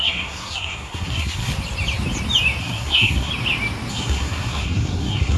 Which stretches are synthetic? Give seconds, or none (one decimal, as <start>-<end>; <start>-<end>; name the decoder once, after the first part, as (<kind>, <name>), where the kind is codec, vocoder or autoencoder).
0.0-1.5 (codec, SNAC); 2.6-3.3; 3.9-5.4